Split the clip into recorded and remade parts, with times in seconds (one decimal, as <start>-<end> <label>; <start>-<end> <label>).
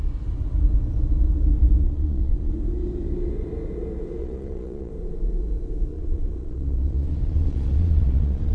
0.0-1.8 recorded; 1.8-2.5 remade; 2.5-4.2 recorded; 4.2-4.9 remade; 4.9-5.9 recorded; 5.9-8.5 remade